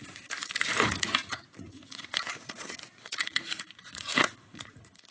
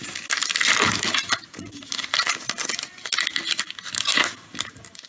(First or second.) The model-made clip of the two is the first